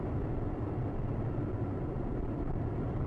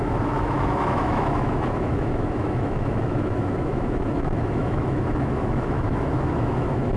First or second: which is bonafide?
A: first